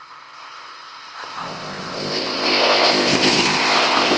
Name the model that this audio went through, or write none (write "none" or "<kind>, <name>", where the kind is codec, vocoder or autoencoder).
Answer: codec, ZipCodec